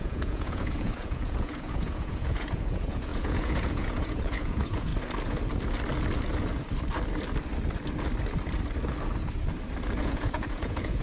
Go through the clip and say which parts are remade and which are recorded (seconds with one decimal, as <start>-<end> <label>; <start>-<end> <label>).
0.0-4.9 remade; 4.9-10.0 recorded; 10.0-11.0 remade